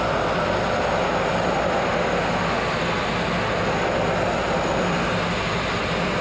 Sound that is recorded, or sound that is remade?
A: recorded